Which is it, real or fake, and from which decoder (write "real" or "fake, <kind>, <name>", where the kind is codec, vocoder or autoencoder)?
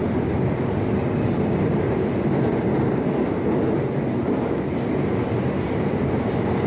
real